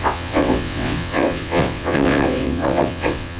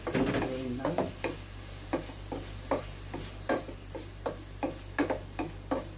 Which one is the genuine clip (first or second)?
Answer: second